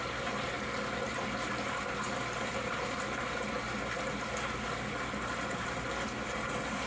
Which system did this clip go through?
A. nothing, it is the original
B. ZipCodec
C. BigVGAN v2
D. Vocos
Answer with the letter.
A